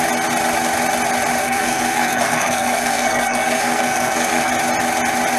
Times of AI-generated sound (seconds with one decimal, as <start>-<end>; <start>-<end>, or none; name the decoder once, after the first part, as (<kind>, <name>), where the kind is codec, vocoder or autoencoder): 1.4-4.5 (codec, SNAC)